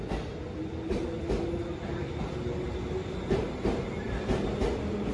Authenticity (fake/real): real